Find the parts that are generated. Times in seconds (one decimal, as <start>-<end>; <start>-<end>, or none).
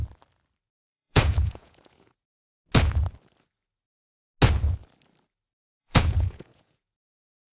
0.6-2.4; 5.8-7.5